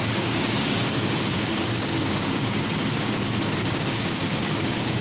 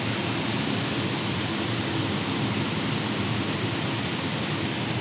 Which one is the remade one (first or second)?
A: first